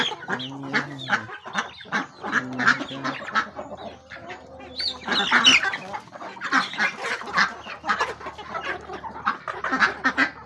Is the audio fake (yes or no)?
no